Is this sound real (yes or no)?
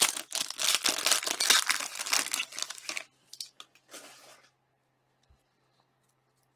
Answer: yes